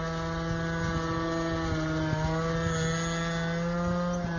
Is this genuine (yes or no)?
yes